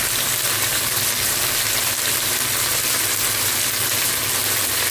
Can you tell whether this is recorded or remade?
recorded